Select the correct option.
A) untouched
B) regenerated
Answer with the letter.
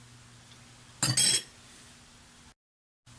A